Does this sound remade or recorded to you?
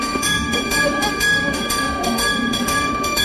remade